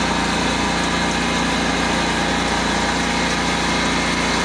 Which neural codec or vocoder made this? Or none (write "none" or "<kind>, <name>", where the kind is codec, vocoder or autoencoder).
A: none